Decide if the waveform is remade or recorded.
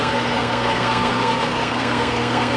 remade